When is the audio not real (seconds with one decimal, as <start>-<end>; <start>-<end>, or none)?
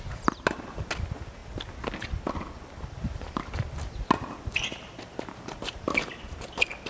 none